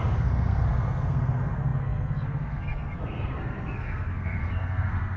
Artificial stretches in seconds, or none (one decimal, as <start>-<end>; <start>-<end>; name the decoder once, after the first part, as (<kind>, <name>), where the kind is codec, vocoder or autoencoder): 0.0-5.2 (codec, SNAC)